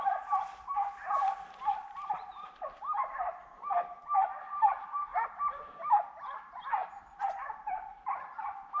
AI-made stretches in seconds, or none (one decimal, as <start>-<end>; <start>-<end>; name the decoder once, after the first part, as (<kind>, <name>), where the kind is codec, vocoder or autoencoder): 1.7-3.4 (vocoder, BigVGAN v2); 5.1-5.9; 6.8-8.2